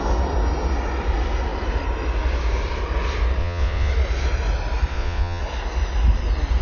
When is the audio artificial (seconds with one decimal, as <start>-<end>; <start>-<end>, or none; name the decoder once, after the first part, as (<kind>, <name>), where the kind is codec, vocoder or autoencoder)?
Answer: 3.4-3.9 (vocoder, Vocos); 4.9-5.4